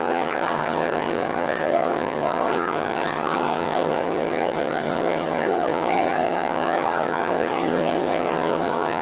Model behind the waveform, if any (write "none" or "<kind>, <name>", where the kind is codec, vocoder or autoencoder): vocoder, HiFi-GAN